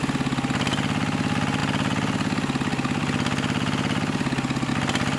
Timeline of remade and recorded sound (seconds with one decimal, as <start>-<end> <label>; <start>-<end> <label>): 0.0-5.2 recorded